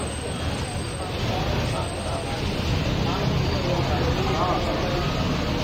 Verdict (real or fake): real